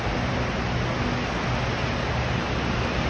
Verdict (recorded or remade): recorded